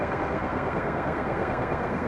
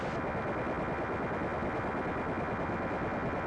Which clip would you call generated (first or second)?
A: first